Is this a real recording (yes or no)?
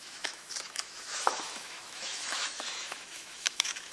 no